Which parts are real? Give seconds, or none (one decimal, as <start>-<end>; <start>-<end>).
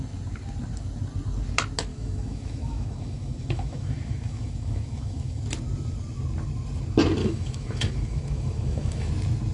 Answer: 0.0-1.9; 5.4-7.2; 9.1-9.5